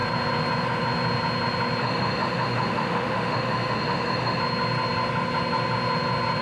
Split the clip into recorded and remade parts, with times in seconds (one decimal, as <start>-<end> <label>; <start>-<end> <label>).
0.0-1.8 recorded; 1.8-4.4 remade; 4.4-6.4 recorded